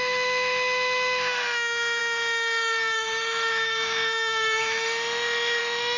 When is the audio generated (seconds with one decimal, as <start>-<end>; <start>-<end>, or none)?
0.0-6.0